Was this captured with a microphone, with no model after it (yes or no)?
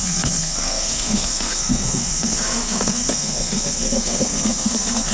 no